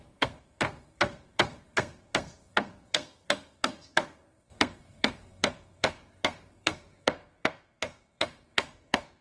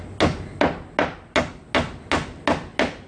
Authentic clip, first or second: second